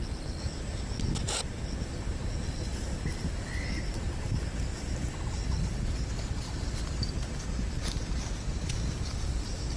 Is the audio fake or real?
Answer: real